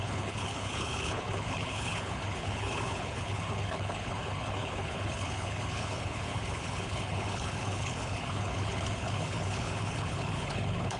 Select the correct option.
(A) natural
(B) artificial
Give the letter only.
B